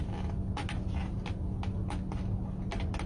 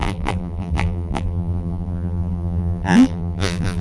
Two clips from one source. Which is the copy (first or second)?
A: second